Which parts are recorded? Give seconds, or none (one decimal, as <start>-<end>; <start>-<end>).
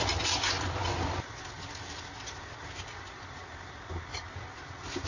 0.0-5.1